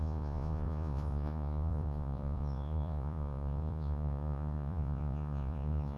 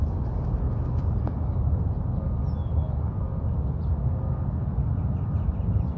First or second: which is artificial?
first